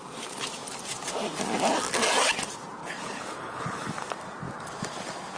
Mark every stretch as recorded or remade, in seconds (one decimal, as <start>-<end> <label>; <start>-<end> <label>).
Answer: 0.0-2.8 recorded; 2.8-3.9 remade; 3.9-5.4 recorded